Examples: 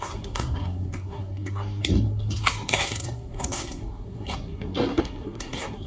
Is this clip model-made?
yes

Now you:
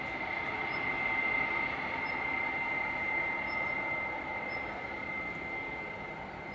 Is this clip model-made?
no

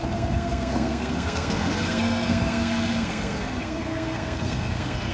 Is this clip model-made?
yes